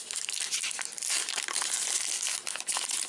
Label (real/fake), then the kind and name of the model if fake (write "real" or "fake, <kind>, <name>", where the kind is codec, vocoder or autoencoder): real